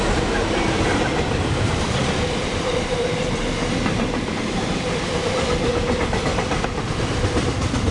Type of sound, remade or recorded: remade